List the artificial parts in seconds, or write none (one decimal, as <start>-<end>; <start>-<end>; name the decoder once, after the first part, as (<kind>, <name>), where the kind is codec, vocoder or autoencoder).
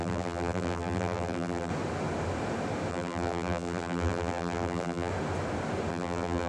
0.0-1.7 (vocoder, BigVGAN v2); 2.9-5.1; 5.9-6.5